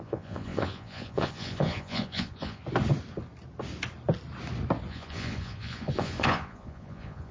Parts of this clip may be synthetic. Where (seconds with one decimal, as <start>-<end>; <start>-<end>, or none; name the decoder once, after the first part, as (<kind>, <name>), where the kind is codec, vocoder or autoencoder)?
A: 0.0-2.6 (vocoder, Vocos); 4.9-7.3